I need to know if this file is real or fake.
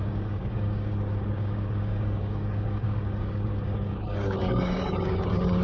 fake